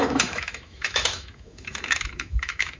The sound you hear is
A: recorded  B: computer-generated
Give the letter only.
B